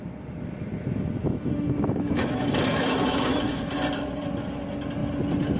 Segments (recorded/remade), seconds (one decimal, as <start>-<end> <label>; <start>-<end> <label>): 0.0-1.2 recorded; 1.2-3.6 remade; 3.6-5.6 recorded